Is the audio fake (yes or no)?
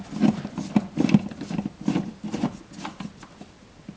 no